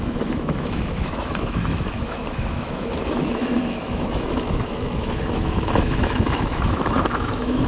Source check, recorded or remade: remade